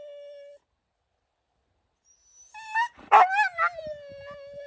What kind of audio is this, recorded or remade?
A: recorded